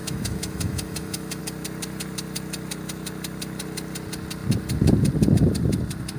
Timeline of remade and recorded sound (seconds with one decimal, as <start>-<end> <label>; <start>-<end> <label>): 0.0-1.4 remade; 1.4-6.2 recorded